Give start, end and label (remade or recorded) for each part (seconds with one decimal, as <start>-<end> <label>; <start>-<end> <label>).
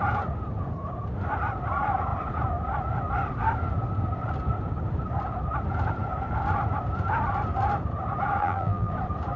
0.0-8.4 recorded; 8.4-8.9 remade; 8.9-9.4 recorded